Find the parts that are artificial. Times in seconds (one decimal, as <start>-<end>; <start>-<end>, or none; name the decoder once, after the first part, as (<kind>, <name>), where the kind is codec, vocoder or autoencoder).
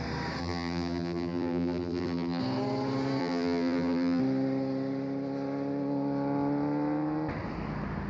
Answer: 0.4-2.4 (vocoder, BigVGAN v2); 3.2-4.2